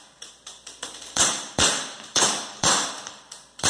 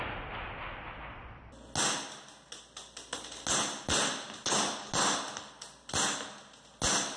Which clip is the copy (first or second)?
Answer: first